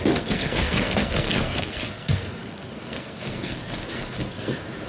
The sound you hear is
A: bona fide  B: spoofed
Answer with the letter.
B